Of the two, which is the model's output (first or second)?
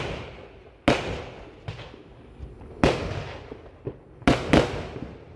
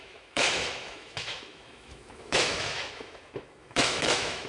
second